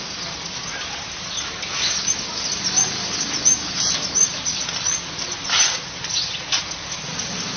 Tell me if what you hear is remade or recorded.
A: recorded